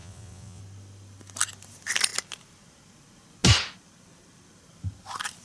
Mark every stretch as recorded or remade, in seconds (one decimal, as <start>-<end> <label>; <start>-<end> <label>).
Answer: 0.0-0.6 remade; 0.6-5.4 recorded